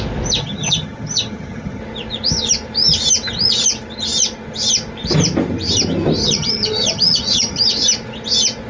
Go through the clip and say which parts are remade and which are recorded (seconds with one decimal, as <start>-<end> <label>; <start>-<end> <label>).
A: 0.0-0.4 recorded; 0.4-1.8 remade; 1.8-6.2 recorded; 6.2-7.6 remade; 7.6-8.7 recorded

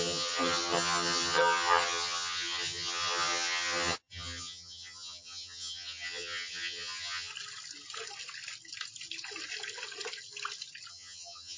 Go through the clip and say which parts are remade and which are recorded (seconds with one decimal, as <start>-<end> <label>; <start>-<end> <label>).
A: 0.0-7.3 remade; 7.3-10.9 recorded; 10.9-11.6 remade

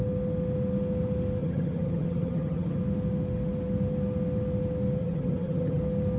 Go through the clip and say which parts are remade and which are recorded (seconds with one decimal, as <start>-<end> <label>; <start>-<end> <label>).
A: 0.0-1.4 recorded; 1.4-2.8 remade; 2.8-5.0 recorded; 5.0-5.8 remade; 5.8-6.2 recorded

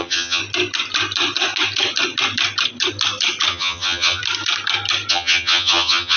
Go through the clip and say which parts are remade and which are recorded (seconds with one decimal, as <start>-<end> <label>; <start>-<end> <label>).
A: 0.0-0.4 remade; 0.4-3.5 recorded; 3.5-4.2 remade; 4.2-5.1 recorded; 5.1-6.2 remade